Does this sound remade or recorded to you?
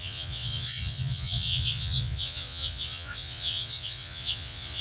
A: remade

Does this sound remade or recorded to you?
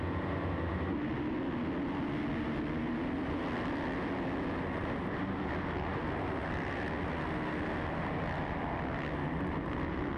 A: recorded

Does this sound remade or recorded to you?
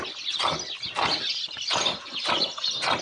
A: recorded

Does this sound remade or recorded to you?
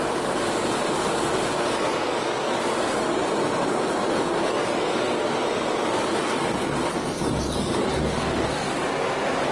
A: recorded